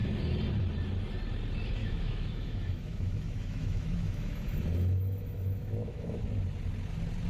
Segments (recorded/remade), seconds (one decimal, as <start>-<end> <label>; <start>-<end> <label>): 0.0-1.8 recorded; 1.8-6.2 remade; 6.2-7.3 recorded